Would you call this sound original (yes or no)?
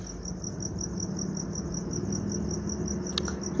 yes